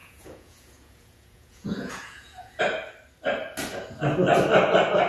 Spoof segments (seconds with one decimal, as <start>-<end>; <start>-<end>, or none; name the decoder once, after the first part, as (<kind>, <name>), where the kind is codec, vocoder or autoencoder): 0.0-2.6 (vocoder, Vocos)